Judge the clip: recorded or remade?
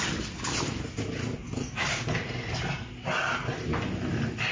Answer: recorded